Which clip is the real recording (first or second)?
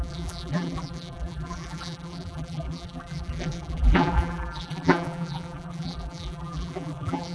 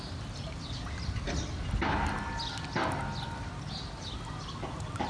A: second